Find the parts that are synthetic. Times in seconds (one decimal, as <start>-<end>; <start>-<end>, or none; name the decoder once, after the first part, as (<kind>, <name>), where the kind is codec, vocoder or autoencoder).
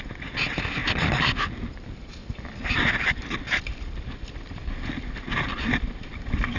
2.2-6.1 (vocoder, BigVGAN v2)